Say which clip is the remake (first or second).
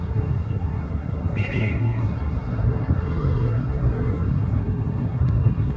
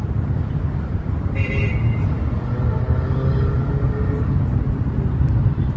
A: first